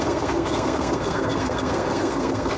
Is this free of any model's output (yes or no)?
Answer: no